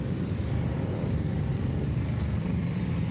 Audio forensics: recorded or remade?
remade